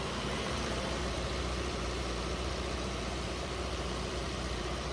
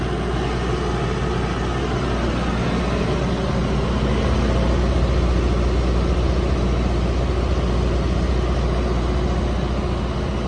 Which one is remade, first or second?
first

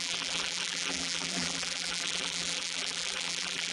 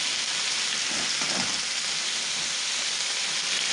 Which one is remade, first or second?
first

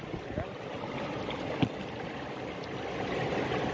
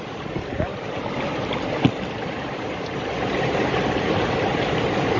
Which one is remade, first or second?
second